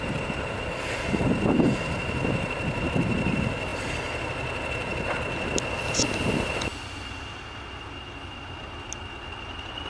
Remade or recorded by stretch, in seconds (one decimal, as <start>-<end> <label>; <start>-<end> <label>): 0.0-9.9 recorded